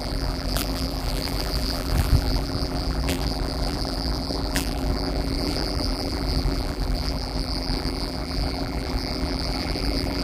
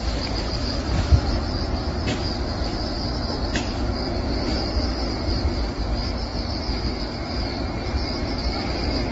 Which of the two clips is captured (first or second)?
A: second